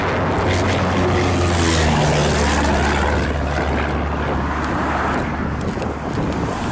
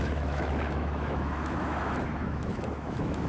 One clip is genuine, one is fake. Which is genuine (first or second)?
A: first